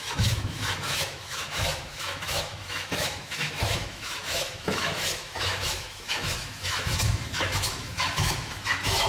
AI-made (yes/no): yes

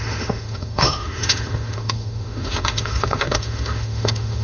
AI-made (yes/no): yes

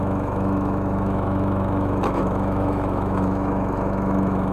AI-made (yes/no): yes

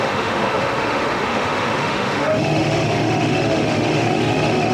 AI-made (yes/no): yes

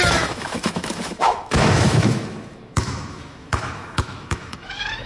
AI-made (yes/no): yes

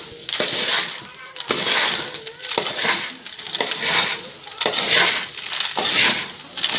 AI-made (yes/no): no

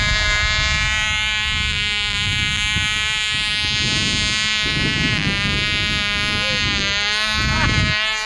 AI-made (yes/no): no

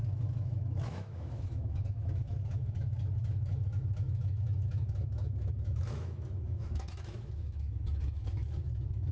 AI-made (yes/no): yes